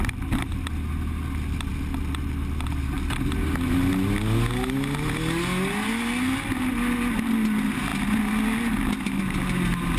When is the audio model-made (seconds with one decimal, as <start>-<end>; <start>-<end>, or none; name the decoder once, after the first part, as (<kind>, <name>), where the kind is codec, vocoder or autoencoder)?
none